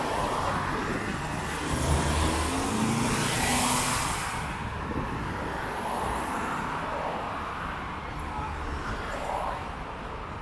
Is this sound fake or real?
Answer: real